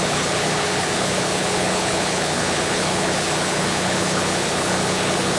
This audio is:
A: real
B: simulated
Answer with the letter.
B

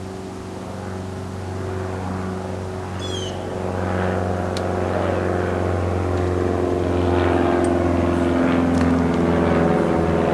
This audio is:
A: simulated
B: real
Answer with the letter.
B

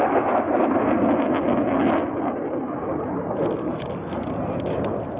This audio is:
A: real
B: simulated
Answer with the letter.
A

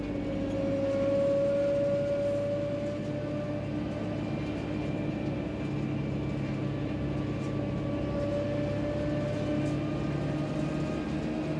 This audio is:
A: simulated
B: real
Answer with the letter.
B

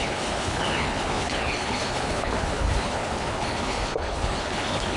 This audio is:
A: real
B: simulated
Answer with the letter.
B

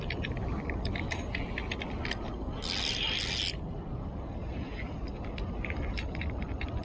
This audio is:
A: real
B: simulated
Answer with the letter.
A